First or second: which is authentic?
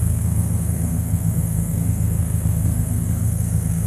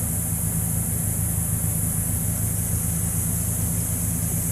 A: second